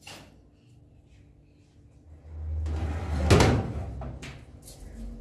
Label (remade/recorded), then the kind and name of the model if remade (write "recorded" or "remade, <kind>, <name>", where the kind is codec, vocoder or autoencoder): recorded